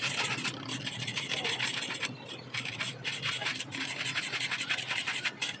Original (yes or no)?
yes